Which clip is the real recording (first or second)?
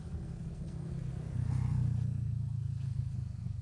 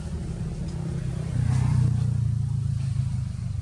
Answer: second